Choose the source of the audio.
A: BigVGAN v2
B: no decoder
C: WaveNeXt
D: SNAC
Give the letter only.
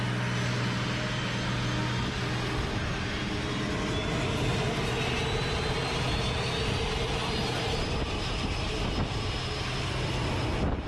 B